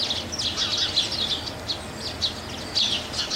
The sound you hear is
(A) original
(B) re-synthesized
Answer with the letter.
A